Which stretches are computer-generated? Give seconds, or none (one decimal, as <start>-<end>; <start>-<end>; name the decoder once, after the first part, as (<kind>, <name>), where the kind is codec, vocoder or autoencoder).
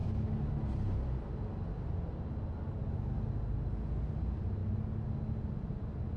none